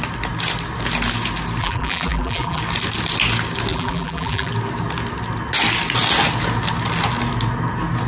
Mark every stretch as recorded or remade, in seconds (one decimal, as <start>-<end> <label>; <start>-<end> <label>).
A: 0.0-1.6 recorded; 1.6-2.6 remade; 2.6-3.7 recorded; 3.7-4.5 remade; 4.5-8.1 recorded